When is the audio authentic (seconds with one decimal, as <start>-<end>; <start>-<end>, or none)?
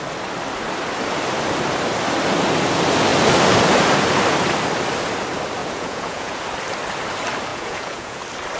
0.0-5.6; 6.4-7.5; 8.2-8.6